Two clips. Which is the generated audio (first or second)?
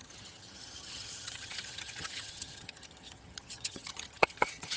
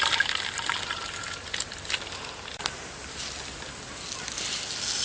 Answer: first